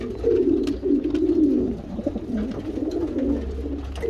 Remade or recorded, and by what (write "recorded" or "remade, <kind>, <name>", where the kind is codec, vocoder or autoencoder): recorded